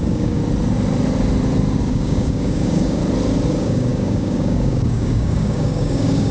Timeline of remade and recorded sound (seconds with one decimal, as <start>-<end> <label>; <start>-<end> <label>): 0.0-0.4 remade; 0.4-1.9 recorded; 1.9-3.0 remade; 3.0-3.5 recorded; 3.5-6.3 remade

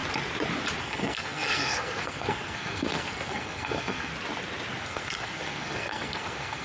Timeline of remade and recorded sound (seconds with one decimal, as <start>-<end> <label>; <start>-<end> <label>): 0.0-0.8 recorded; 0.8-4.1 remade; 4.1-4.8 recorded; 4.8-6.6 remade

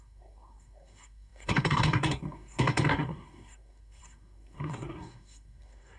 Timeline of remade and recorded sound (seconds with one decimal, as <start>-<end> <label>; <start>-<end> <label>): 0.0-6.0 remade

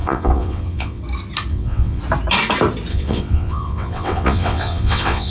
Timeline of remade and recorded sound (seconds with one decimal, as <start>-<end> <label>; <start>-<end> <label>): 0.0-1.0 remade; 1.0-1.5 recorded; 1.5-2.0 remade; 2.0-2.9 recorded; 2.9-5.3 remade

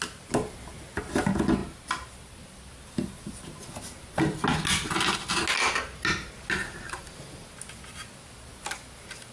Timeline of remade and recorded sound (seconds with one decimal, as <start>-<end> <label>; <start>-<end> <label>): 0.0-9.3 recorded

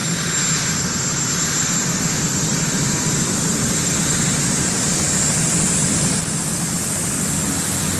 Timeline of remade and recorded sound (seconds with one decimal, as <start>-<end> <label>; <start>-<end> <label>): 0.0-2.5 recorded; 2.5-5.1 remade; 5.1-8.0 recorded

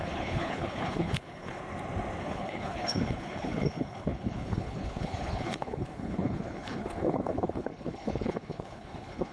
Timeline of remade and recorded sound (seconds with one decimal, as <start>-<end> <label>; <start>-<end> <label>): 0.0-1.6 remade; 1.6-2.2 recorded; 2.2-9.3 remade